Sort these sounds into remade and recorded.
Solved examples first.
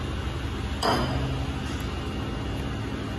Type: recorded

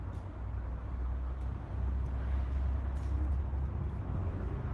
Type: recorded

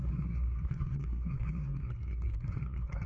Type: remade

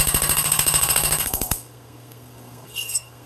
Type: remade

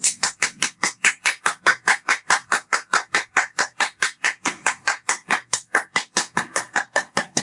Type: remade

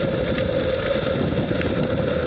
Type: recorded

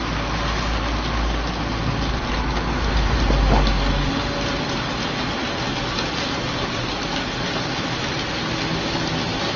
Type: recorded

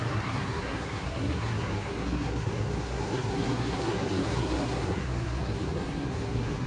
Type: remade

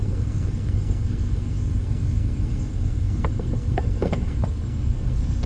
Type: remade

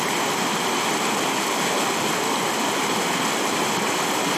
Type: recorded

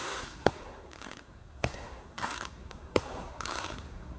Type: remade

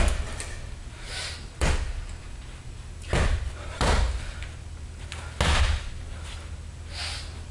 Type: recorded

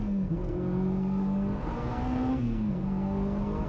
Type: remade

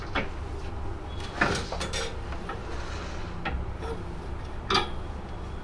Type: recorded